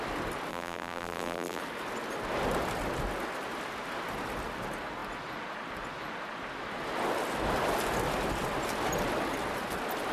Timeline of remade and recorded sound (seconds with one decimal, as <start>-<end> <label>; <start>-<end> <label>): 0.0-0.5 recorded; 0.5-1.6 remade; 1.6-10.1 recorded